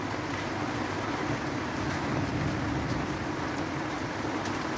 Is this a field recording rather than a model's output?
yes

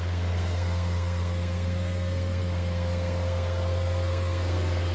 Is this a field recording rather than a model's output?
no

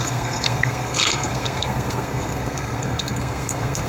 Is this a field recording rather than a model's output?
no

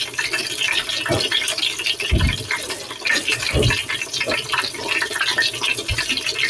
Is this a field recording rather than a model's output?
yes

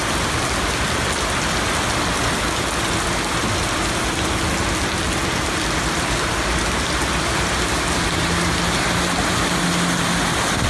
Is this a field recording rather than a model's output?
yes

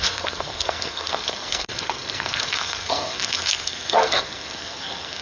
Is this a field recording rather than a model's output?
no